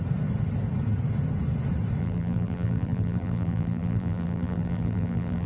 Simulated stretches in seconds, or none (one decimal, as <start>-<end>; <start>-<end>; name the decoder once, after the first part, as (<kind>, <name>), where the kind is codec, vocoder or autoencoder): 2.0-5.5 (vocoder, BigVGAN v2)